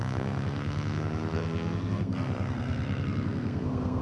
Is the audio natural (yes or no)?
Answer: no